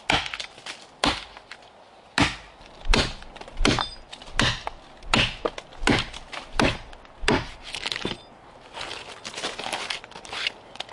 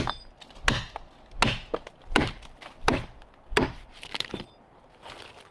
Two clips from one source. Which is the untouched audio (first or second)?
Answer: first